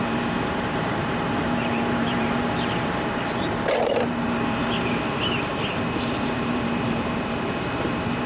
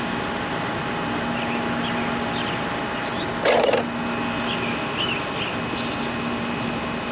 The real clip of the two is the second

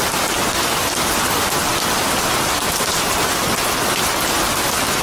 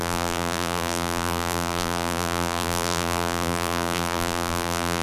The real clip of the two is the first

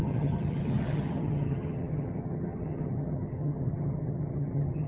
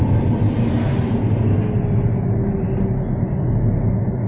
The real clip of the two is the second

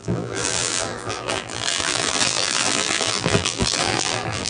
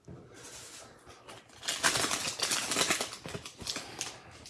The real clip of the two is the second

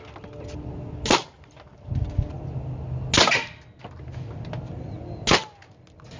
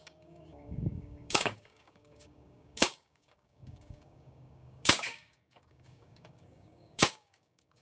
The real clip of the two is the first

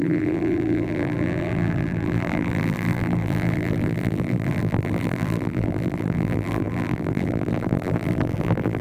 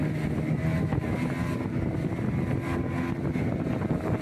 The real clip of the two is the second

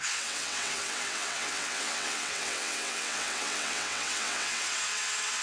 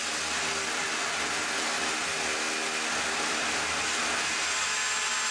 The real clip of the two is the second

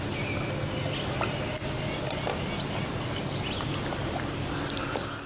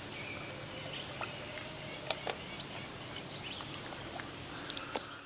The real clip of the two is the first